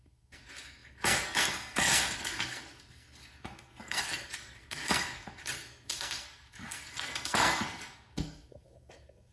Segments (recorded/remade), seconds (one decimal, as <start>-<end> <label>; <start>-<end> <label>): 0.0-9.3 remade